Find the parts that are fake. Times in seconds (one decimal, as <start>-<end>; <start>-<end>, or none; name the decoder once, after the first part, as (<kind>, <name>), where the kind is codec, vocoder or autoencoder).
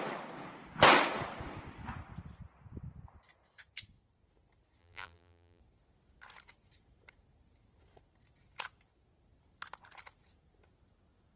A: 4.8-5.6 (vocoder, BigVGAN v2)